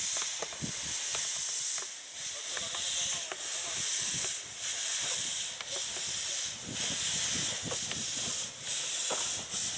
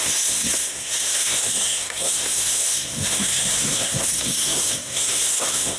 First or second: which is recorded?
first